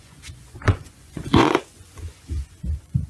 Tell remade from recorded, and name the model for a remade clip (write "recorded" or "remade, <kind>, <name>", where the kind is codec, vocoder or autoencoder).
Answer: remade, vocoder, Vocos